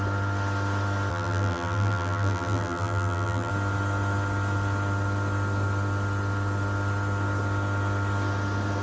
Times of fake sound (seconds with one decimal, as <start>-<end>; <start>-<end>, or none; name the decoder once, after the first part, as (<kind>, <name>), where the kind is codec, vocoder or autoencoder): 1.1-3.5 (vocoder, BigVGAN v2)